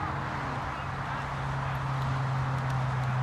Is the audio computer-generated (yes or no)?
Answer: no